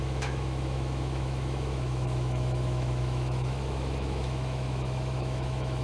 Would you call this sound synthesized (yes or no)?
yes